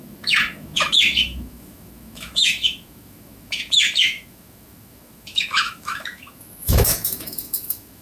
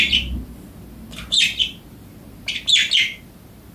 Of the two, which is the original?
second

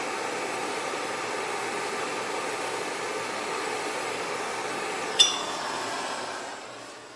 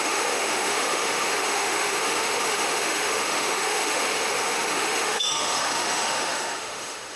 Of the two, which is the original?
first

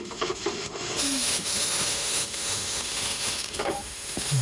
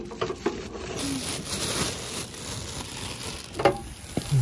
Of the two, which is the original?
second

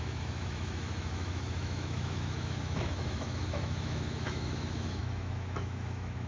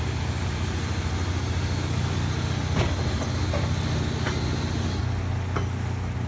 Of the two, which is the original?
second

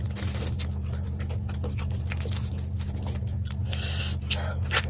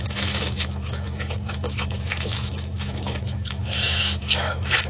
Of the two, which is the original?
first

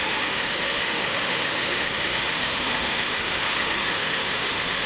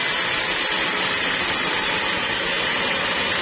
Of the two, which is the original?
second